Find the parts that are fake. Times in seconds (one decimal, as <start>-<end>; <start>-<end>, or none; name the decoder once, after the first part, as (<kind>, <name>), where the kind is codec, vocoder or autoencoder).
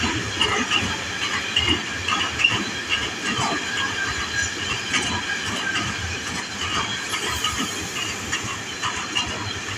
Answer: 0.0-8.0 (vocoder, BigVGAN v2); 8.7-9.8